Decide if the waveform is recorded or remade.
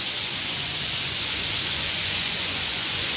remade